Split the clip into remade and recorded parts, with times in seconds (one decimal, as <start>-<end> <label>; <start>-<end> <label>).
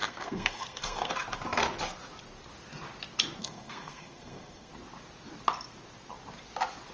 0.0-1.1 remade; 1.1-3.4 recorded; 3.4-4.7 remade; 4.7-6.9 recorded